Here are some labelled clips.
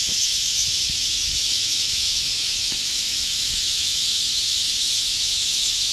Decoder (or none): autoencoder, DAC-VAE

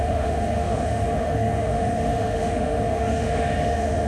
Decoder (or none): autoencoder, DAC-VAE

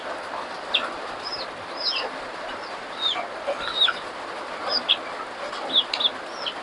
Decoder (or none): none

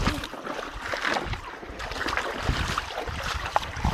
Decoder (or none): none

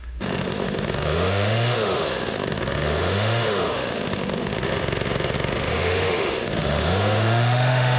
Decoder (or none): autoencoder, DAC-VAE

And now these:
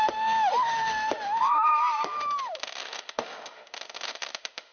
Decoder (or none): autoencoder, DAC-VAE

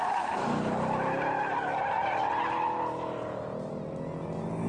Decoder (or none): none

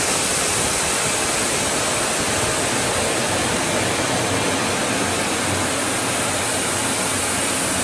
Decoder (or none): none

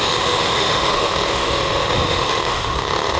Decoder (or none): autoencoder, DAC-VAE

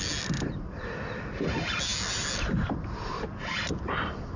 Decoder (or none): none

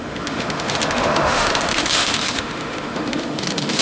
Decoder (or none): autoencoder, DAC-VAE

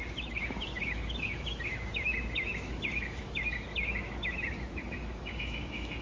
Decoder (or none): autoencoder, DAC-VAE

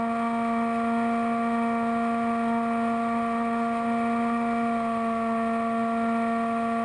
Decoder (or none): none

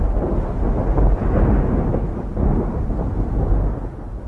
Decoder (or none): none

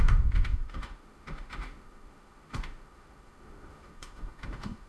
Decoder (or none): autoencoder, DAC-VAE